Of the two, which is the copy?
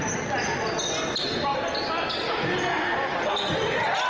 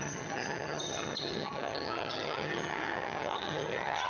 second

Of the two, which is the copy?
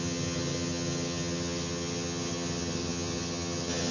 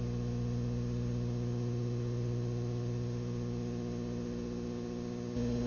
first